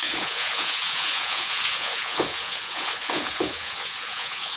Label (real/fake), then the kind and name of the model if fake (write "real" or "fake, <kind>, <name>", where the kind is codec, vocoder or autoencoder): fake, vocoder, Vocos